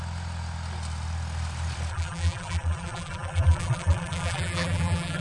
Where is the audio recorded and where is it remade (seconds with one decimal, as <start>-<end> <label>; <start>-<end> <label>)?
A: 0.0-1.9 recorded; 1.9-5.2 remade